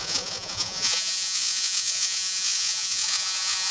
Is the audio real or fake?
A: fake